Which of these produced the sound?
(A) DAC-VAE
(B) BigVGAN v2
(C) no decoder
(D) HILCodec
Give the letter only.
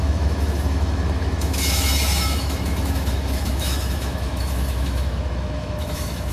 A